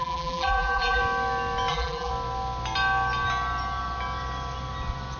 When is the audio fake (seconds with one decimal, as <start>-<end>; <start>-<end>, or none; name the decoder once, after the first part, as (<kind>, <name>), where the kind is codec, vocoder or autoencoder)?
0.0-1.0 (vocoder, BigVGAN v2); 1.7-2.1